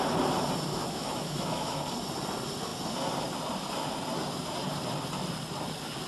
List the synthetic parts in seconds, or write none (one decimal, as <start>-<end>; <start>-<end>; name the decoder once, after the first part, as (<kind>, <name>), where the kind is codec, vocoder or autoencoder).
0.7-1.8 (autoencoder, DAC-VAE)